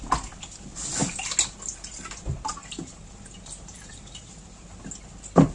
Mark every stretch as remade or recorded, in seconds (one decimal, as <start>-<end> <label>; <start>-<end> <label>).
0.0-2.6 recorded; 2.6-4.8 remade; 4.8-5.5 recorded